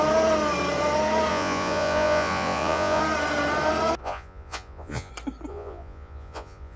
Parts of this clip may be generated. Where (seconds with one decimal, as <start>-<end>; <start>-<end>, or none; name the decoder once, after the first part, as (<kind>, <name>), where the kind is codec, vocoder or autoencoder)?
1.3-3.0 (vocoder, Vocos); 4.0-5.1; 5.5-6.8